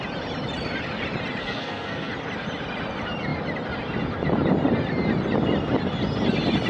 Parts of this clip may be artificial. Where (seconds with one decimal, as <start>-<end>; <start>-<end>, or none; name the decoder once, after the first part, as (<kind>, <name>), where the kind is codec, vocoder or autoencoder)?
1.4-2.1 (codec, SNAC)